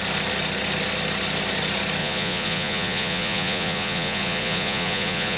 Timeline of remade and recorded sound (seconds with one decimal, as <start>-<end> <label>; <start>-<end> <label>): 0.0-2.0 recorded; 2.0-5.4 remade